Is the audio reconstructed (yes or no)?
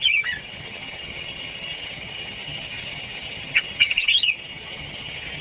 yes